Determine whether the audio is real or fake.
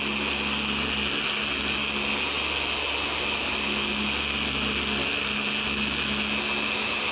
real